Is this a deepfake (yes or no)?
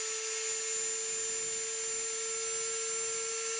no